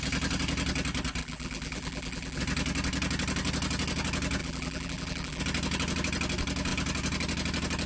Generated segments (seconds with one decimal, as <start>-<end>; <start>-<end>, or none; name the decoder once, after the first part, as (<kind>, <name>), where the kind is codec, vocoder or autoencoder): 1.2-2.4 (vocoder, BigVGAN v2); 4.4-5.4